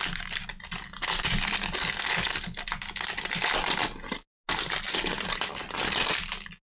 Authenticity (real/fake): real